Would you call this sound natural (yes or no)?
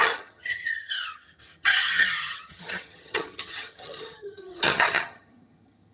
no